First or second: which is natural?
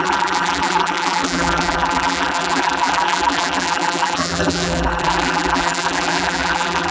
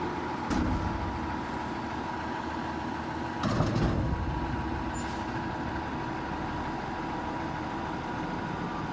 second